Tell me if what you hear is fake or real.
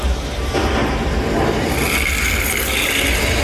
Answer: real